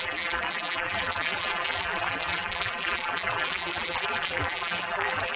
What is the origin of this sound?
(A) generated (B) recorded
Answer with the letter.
A